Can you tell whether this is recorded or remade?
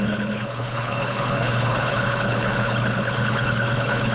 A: remade